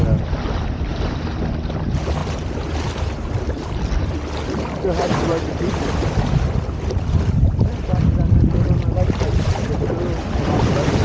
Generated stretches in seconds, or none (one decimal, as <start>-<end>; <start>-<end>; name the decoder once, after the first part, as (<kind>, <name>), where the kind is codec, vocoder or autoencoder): 0.9-1.5 (vocoder, BigVGAN v2); 5.3-9.5